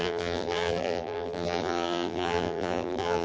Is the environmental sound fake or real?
fake